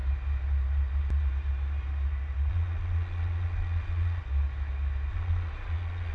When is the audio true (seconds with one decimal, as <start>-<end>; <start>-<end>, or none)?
0.0-2.5; 4.2-5.1

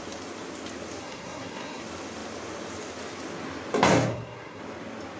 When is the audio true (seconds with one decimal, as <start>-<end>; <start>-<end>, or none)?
0.0-1.0; 1.8-4.1; 4.6-5.2